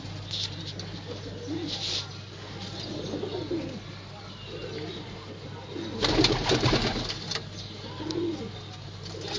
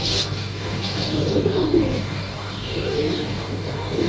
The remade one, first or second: second